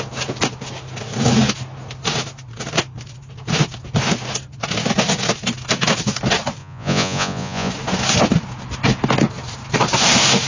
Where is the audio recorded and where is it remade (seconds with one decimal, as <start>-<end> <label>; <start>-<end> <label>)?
0.0-6.6 recorded; 6.6-7.7 remade; 7.7-10.5 recorded